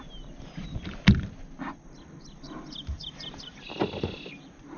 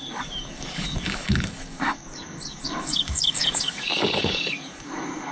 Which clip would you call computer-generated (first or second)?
second